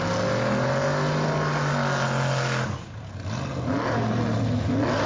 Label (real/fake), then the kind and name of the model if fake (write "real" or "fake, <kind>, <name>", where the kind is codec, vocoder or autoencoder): real